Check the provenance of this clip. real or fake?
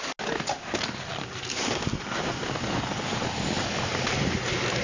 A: real